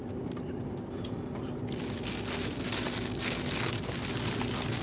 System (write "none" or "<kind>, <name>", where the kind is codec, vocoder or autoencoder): none